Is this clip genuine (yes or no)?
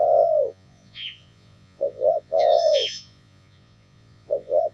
no